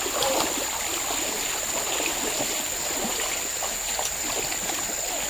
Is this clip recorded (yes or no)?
yes